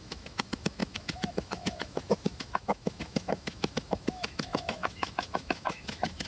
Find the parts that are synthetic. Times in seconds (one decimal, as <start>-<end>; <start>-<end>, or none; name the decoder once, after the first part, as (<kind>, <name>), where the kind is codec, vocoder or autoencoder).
0.0-6.3 (autoencoder, DAC-VAE)

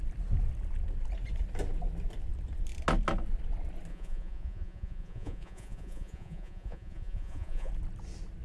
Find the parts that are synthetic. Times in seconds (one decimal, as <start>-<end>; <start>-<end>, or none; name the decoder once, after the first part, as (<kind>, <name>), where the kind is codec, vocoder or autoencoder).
3.9-7.7 (vocoder, Vocos)

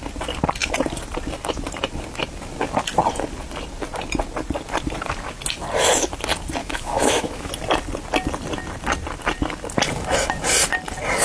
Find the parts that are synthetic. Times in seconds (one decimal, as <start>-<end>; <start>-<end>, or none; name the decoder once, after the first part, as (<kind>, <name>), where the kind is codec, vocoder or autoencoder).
6.6-7.5 (autoencoder, DAC-VAE)

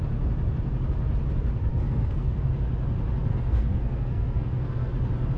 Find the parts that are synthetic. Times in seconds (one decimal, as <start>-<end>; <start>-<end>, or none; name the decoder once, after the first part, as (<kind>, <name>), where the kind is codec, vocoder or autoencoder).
1.7-2.5 (codec, SNAC); 3.3-4.9

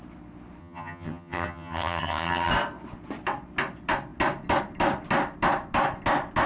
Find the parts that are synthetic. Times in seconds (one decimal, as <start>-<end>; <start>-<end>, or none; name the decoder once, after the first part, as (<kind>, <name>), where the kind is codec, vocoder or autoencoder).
0.6-2.5 (vocoder, HiFi-GAN)

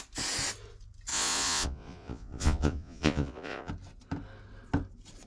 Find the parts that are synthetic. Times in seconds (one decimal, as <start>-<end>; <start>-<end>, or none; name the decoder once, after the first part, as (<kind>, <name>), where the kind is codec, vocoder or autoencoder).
1.1-3.7 (vocoder, Vocos)

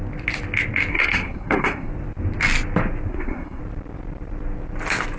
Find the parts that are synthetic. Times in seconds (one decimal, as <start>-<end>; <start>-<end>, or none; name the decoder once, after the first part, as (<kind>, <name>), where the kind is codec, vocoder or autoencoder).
0.9-1.9 (codec, SNAC); 3.1-3.6

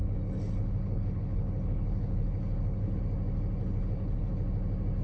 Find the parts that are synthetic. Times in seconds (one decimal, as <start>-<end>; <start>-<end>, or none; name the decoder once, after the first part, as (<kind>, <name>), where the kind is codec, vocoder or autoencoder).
0.0-3.0 (codec, HILCodec); 3.6-4.3